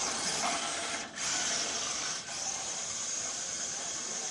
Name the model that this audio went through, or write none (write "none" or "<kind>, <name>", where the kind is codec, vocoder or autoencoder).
vocoder, BigVGAN v2